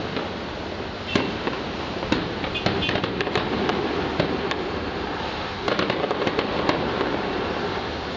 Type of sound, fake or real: real